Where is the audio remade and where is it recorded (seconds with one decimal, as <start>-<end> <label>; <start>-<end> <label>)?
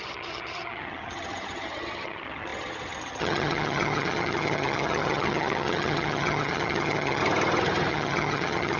0.0-7.2 remade; 7.2-7.9 recorded; 7.9-8.8 remade